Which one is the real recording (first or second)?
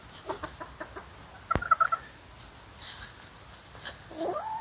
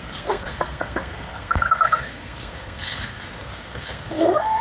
first